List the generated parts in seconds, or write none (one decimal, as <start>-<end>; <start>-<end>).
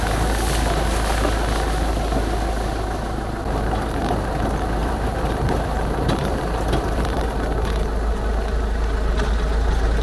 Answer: 4.8-7.2